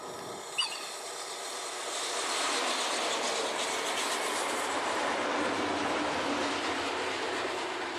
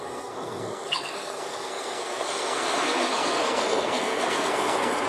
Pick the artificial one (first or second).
second